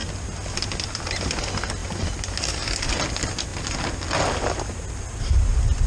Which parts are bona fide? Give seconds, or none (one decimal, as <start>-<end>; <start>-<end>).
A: 0.0-5.9